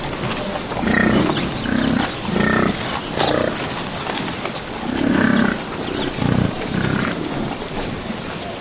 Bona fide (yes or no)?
yes